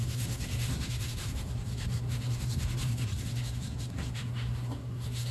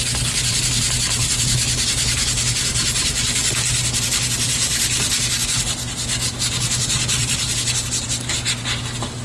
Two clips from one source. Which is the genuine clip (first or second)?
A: second